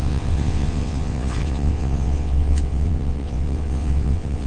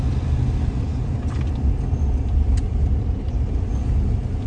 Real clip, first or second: second